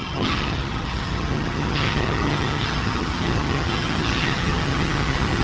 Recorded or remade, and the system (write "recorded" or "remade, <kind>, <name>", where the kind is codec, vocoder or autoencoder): remade, vocoder, HiFi-GAN